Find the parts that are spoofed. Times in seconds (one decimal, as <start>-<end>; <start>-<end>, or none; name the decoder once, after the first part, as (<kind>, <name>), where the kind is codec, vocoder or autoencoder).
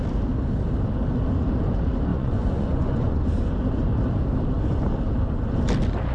2.1-3.3 (vocoder, Vocos)